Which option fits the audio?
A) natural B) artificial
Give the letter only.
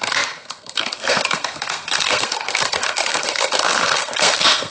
B